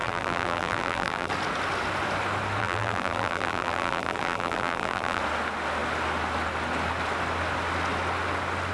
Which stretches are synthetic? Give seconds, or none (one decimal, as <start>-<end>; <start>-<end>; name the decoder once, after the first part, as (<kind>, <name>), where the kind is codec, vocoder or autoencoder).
0.0-1.3 (vocoder, BigVGAN v2); 2.6-5.2